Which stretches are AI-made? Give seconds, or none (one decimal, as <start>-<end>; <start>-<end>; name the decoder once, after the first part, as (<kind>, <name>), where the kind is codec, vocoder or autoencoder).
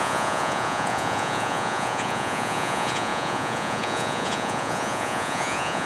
0.0-5.9 (vocoder, Vocos)